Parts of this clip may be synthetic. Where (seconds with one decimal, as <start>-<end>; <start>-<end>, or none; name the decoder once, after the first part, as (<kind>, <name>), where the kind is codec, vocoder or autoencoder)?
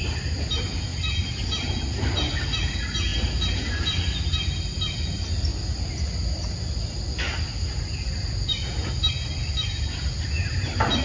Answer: none